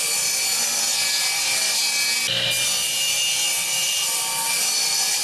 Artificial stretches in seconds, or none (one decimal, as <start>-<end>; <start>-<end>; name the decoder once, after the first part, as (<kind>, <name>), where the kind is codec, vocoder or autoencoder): none